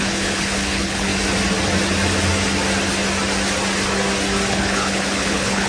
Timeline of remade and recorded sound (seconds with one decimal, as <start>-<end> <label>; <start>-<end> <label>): 0.0-1.1 remade; 1.1-4.5 recorded; 4.5-5.7 remade